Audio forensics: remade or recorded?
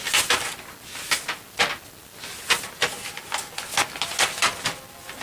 recorded